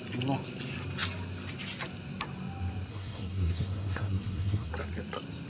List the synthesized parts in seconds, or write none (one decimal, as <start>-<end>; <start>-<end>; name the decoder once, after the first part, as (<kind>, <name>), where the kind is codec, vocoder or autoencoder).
2.9-4.7 (codec, SNAC)